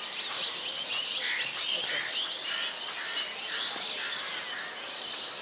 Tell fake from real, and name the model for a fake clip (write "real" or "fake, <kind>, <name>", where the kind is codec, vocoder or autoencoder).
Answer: real